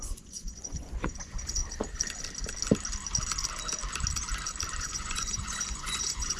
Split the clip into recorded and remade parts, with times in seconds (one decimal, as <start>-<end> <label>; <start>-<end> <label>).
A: 0.0-1.6 remade; 1.6-4.8 recorded; 4.8-6.4 remade